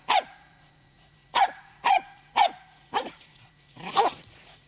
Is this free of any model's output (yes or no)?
no